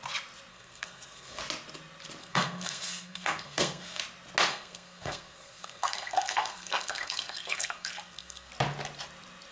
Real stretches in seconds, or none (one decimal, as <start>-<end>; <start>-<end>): 0.0-0.5; 1.4-2.2; 4.0-4.5; 8.5-9.5